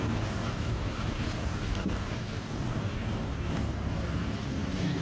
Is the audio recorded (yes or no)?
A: no